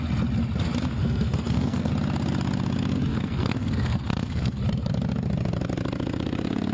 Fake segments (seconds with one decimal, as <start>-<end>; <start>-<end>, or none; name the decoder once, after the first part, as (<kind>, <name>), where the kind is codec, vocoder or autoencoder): 1.0-1.9 (codec, SNAC); 3.1-4.6